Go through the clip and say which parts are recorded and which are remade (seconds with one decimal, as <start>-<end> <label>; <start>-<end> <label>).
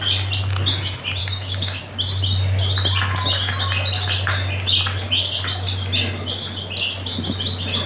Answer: 0.0-1.2 recorded; 1.2-1.8 remade; 1.8-7.9 recorded